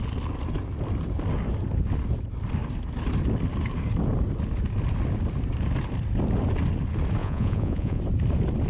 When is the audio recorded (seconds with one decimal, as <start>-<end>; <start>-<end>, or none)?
0.0-7.2; 8.0-8.7